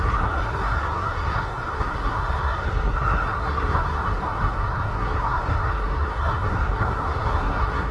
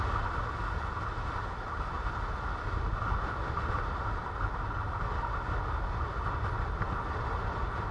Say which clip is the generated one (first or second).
first